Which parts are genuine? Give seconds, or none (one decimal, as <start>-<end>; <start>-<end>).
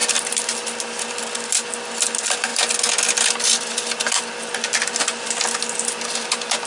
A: 0.0-6.7